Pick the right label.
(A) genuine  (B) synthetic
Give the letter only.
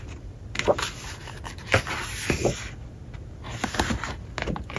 A